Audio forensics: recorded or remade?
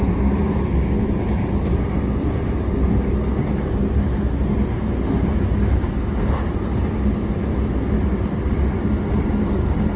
recorded